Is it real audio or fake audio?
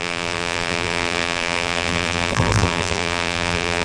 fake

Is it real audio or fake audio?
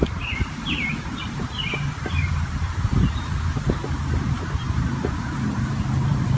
fake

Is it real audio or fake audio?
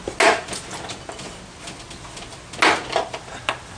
real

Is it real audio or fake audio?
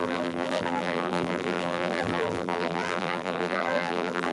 fake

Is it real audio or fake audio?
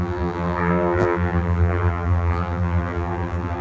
fake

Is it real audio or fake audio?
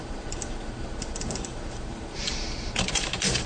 fake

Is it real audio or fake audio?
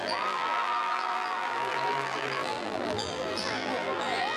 fake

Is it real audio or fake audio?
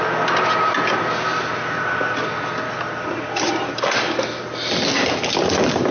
real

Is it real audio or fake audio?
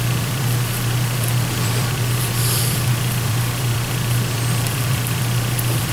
fake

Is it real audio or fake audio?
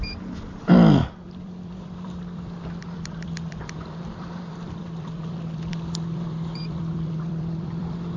fake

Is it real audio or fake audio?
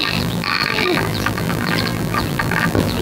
fake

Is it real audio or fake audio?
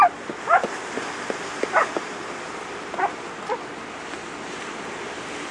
fake